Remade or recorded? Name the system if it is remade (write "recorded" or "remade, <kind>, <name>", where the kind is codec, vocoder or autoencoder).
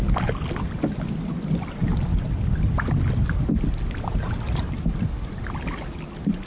recorded